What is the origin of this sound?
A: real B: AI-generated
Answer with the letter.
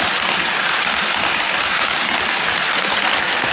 A